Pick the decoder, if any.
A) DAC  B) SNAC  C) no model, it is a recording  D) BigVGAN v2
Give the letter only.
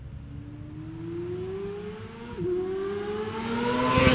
C